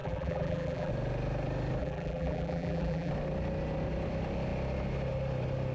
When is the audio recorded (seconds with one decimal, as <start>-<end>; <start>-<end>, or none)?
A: 0.9-1.8; 3.1-5.7